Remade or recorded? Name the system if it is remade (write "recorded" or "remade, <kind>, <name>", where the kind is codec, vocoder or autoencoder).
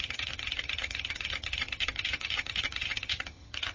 remade, vocoder, HiFi-GAN